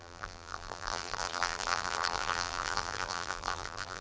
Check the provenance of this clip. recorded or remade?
remade